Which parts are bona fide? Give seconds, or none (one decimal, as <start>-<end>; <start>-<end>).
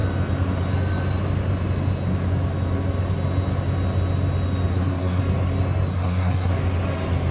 0.0-4.7; 5.2-5.9; 6.5-7.3